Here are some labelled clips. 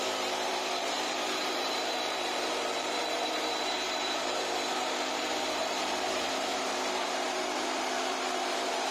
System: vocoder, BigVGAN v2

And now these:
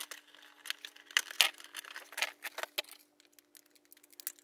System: none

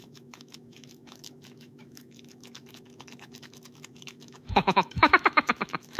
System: autoencoder, DAC-VAE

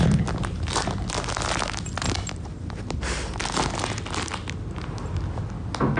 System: none